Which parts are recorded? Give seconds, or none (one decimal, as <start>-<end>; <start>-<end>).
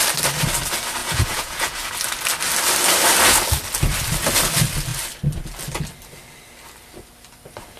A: 0.0-1.0; 1.9-7.8